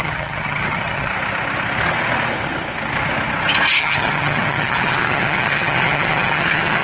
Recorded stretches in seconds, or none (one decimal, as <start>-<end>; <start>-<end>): 1.1-3.8